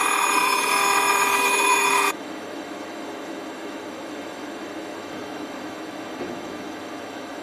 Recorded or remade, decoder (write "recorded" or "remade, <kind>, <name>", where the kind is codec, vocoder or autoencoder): remade, autoencoder, DAC-VAE